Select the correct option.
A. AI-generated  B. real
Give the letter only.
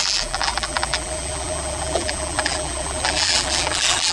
A